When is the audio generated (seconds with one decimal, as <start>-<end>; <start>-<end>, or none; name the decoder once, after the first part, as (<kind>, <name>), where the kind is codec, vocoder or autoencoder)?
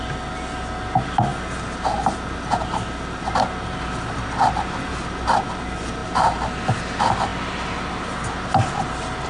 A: none